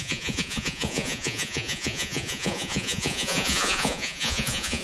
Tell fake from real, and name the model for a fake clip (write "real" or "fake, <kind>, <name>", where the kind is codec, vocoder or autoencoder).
fake, vocoder, Vocos